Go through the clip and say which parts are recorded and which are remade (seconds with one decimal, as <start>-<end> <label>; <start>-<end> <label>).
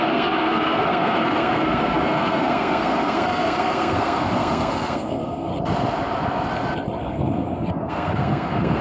0.0-5.5 remade; 5.5-7.0 recorded; 7.0-8.8 remade